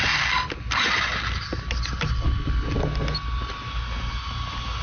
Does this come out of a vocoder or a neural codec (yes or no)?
no